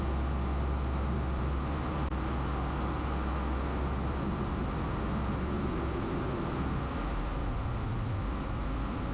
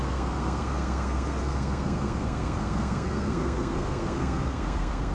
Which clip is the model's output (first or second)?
second